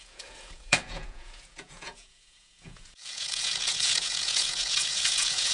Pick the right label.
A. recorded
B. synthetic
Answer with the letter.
B